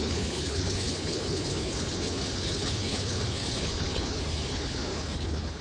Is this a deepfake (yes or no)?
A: yes